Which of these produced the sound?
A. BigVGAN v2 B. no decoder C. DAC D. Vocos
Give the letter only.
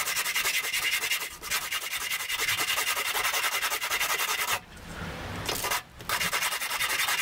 B